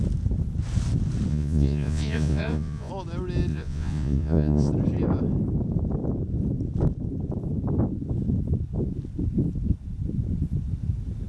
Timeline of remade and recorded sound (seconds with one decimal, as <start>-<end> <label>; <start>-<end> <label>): 0.0-1.3 recorded; 1.3-2.9 remade; 2.9-3.5 recorded; 3.5-4.7 remade; 4.7-11.3 recorded